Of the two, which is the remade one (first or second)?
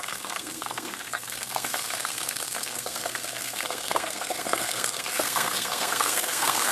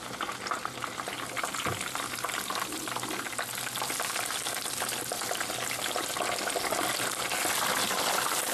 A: first